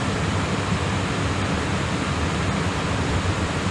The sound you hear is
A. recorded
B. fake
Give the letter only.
A